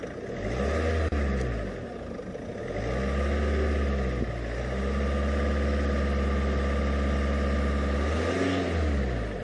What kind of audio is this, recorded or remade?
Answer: recorded